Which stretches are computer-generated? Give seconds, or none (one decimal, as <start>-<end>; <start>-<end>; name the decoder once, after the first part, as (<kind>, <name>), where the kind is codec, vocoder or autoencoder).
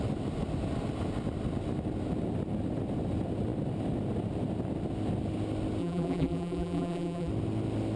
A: 5.8-7.3 (vocoder, BigVGAN v2)